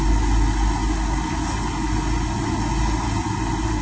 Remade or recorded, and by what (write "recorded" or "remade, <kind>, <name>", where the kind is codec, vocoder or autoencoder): recorded